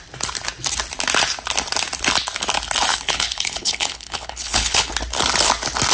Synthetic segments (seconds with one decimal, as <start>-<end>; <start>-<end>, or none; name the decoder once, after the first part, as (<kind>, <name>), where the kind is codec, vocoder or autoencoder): 2.9-4.9 (codec, HILCodec)